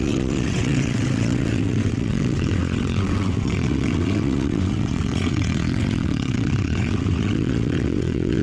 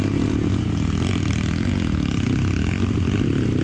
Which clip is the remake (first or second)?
first